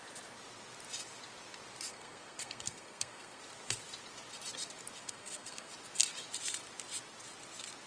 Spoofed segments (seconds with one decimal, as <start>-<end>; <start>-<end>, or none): 1.9-3.4; 5.0-5.7